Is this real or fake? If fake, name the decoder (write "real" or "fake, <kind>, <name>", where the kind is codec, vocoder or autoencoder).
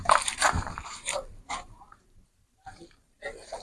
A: fake, vocoder, BigVGAN v2